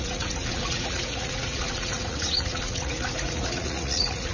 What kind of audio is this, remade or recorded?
remade